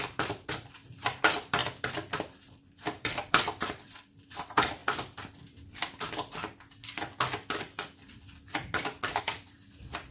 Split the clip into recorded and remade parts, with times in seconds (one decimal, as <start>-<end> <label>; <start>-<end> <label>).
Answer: 0.0-1.6 remade; 1.6-2.3 recorded; 2.3-4.8 remade; 4.8-9.2 recorded; 9.2-10.1 remade